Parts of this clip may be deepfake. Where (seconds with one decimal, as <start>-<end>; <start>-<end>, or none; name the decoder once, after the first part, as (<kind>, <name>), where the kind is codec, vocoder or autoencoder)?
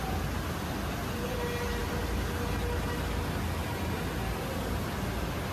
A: none